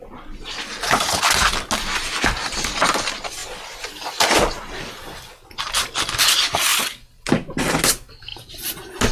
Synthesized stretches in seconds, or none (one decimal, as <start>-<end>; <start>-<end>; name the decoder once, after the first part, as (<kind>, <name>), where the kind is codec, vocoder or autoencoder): 3.4-5.5 (vocoder, BigVGAN v2)